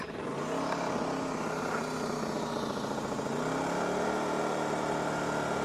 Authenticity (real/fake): real